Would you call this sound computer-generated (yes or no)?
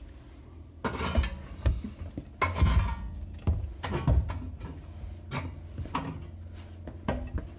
no